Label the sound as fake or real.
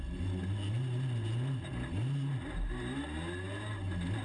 real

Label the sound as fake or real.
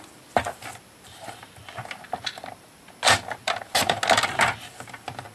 real